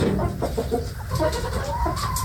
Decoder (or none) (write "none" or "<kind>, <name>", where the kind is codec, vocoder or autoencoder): none